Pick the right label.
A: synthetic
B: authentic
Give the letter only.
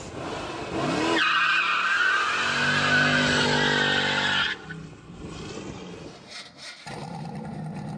B